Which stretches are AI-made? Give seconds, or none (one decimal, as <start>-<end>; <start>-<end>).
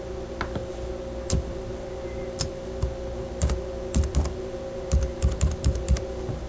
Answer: none